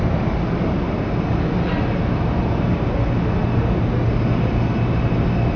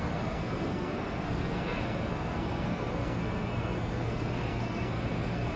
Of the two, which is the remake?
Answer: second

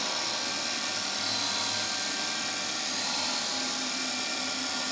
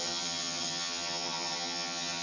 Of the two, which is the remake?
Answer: second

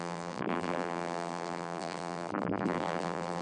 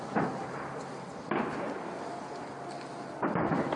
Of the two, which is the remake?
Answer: first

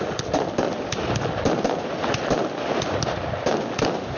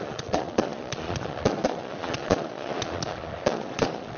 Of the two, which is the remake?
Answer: second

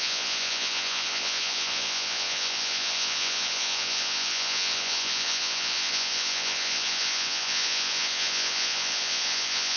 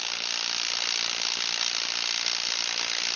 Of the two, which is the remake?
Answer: first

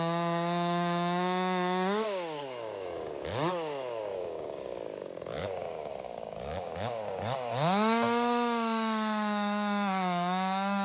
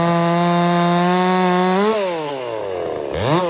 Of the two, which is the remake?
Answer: first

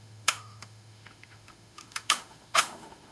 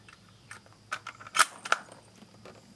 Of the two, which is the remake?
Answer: first